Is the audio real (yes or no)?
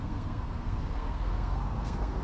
no